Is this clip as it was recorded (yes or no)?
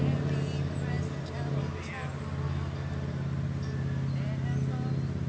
yes